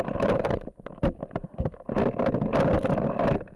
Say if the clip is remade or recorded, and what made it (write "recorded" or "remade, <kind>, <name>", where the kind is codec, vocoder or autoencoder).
recorded